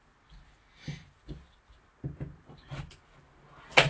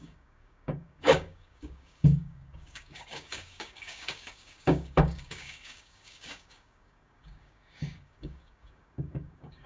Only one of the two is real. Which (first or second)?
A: first